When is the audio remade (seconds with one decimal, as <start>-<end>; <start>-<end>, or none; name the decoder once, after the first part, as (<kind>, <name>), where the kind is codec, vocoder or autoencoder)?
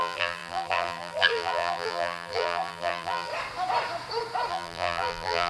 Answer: 0.0-3.3 (vocoder, BigVGAN v2); 4.5-5.5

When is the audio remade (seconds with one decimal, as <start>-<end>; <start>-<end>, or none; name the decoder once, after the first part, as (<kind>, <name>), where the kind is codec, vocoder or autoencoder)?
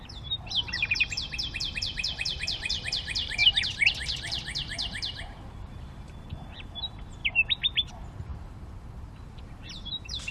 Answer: 0.0-3.4 (vocoder, BigVGAN v2); 3.9-7.2; 7.9-10.3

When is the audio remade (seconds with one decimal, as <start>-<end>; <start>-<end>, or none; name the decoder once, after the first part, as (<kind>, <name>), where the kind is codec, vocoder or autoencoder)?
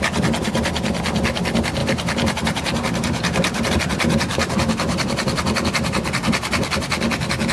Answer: 1.8-3.7 (vocoder, BigVGAN v2); 4.3-6.7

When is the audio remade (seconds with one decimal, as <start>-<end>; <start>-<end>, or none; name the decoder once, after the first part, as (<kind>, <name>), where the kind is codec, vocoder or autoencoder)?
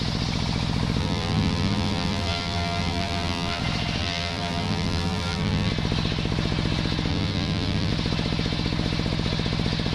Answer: 1.0-3.6 (vocoder, BigVGAN v2); 4.0-5.7; 7.1-7.9